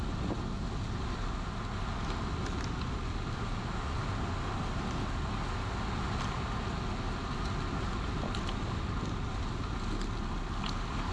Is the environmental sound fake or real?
real